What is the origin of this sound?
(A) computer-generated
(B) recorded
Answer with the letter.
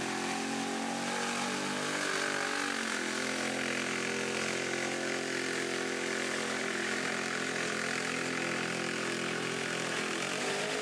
B